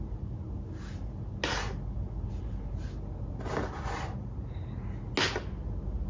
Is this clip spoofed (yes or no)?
no